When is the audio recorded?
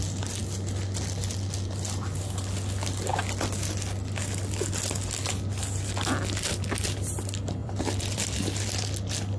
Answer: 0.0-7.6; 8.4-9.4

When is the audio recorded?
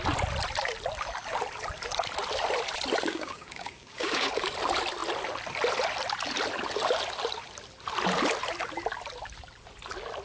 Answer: 0.0-3.1; 4.3-10.2